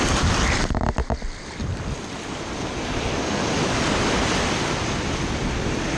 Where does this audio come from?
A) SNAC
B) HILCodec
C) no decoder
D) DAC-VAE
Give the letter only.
C